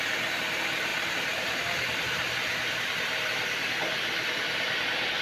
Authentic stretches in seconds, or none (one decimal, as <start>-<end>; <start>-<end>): 0.0-5.2